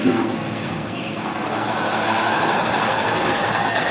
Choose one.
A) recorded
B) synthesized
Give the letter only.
B